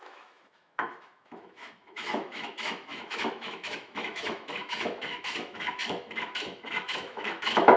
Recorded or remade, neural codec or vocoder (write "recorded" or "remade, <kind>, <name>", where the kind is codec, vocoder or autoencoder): remade, autoencoder, DAC-VAE